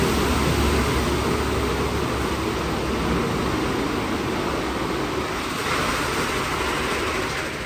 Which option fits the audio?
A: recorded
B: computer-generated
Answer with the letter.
A